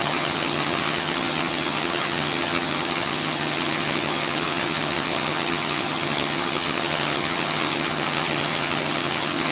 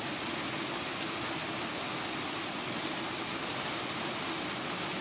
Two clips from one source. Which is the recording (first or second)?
second